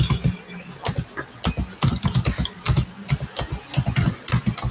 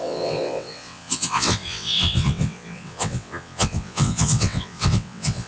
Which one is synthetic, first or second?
second